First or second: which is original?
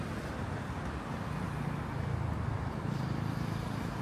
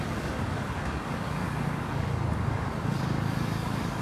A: first